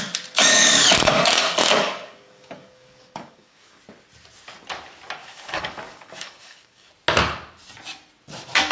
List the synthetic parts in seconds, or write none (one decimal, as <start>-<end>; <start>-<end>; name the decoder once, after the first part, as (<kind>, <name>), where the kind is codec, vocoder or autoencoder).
0.5-3.8 (codec, DAC); 5.2-6.9

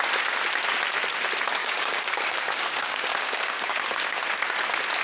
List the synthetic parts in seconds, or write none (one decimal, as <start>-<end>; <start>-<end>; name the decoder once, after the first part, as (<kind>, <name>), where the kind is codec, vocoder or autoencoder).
1.6-4.2 (codec, DAC)

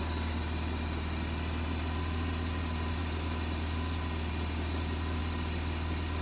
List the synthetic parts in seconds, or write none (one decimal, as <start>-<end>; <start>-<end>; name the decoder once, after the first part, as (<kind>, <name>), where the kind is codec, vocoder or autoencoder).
none

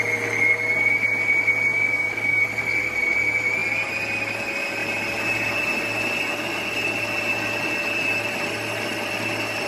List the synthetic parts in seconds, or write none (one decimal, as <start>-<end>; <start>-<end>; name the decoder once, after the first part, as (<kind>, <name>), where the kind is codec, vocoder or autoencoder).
1.7-2.4 (codec, DAC)